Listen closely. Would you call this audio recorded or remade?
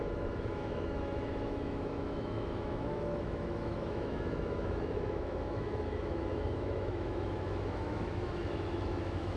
remade